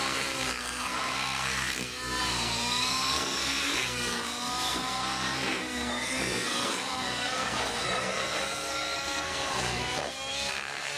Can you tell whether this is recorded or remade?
remade